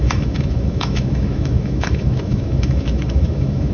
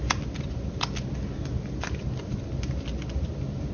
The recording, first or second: second